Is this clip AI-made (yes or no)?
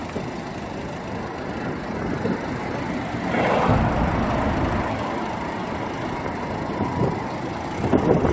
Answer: no